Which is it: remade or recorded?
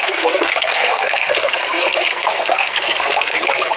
remade